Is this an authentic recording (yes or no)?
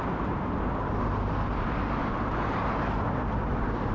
yes